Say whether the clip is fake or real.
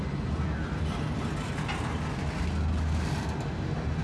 real